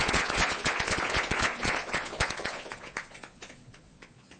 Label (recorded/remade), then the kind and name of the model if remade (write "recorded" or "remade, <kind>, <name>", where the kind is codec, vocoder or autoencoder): remade, vocoder, Vocos